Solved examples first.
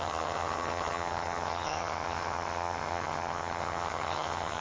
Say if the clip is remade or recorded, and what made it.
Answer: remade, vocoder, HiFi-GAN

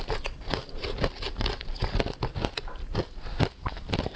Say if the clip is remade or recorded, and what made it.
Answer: recorded